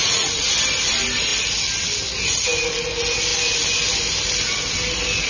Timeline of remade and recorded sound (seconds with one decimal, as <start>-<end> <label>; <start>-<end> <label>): 0.0-0.5 remade; 0.5-5.3 recorded